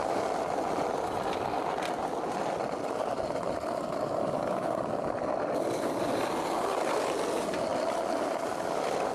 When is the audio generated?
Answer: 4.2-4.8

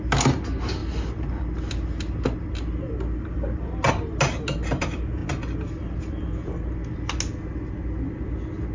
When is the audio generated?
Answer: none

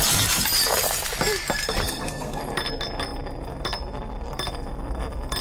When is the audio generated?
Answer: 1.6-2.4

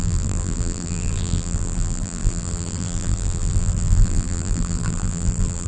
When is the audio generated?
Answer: 0.0-5.7